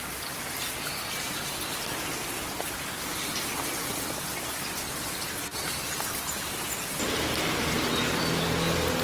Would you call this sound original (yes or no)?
yes